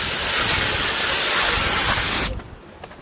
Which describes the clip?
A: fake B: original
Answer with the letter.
B